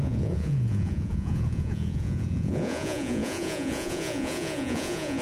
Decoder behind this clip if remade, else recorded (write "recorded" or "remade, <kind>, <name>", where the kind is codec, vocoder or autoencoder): remade, vocoder, Vocos